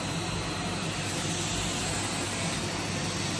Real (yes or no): yes